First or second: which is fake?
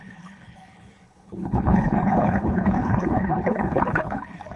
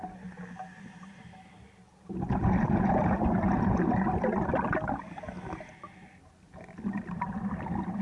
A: first